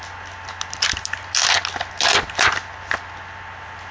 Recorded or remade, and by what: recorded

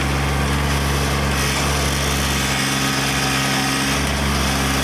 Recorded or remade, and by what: recorded